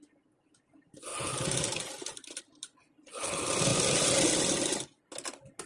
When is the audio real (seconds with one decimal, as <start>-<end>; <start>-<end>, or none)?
0.0-5.7